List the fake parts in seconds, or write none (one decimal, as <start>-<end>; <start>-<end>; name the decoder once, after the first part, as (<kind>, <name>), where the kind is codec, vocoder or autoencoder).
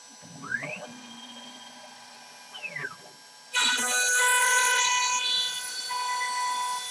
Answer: 0.5-2.2 (vocoder, Vocos); 4.4-4.9